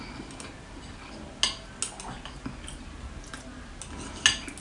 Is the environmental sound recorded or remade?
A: recorded